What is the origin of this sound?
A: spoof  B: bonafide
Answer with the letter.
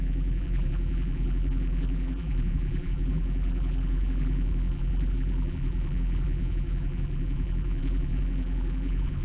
A